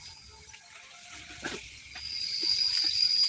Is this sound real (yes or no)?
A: yes